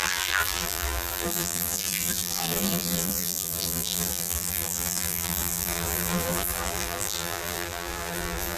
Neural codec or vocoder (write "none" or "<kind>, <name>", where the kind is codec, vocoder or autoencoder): vocoder, BigVGAN v2